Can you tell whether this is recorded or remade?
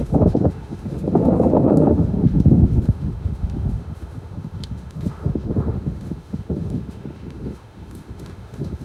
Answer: remade